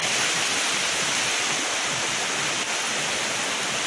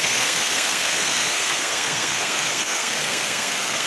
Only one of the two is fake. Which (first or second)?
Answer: second